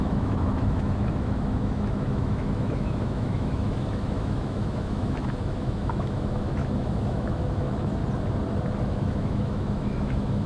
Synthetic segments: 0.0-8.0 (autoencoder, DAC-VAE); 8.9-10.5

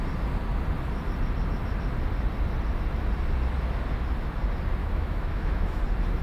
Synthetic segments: 4.8-5.8 (autoencoder, DAC-VAE)

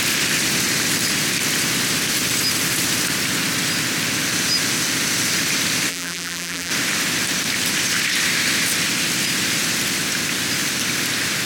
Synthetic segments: 5.9-6.7 (vocoder, BigVGAN v2)

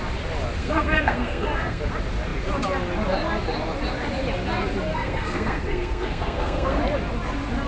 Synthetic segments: 0.6-1.8 (codec, SNAC); 4.9-6.8

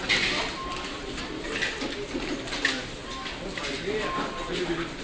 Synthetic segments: none

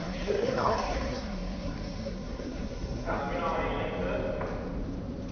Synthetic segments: 0.0-3.2 (codec, SNAC)

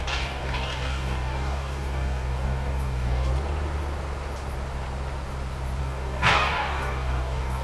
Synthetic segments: 0.0-3.3 (codec, DAC); 5.8-7.6